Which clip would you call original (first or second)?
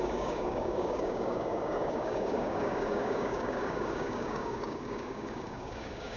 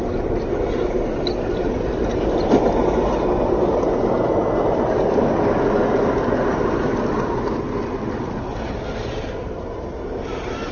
second